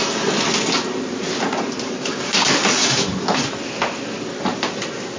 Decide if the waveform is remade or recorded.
recorded